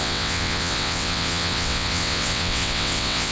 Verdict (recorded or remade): remade